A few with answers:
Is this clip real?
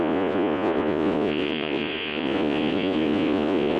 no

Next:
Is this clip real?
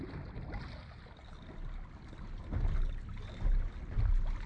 yes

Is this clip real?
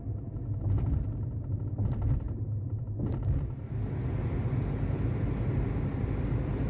yes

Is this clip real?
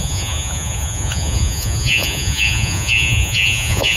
no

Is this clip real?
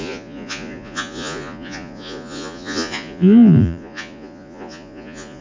no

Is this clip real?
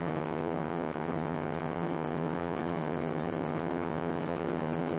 no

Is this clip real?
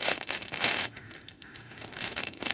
no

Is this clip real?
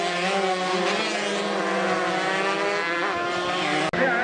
yes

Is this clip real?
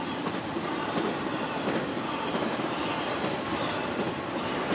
yes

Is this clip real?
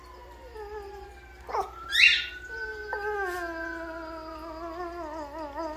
yes